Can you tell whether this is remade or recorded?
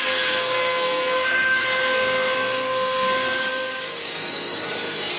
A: remade